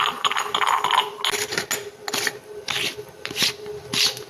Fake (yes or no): no